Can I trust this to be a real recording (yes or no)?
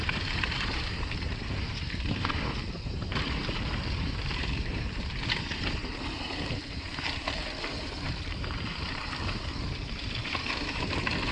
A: no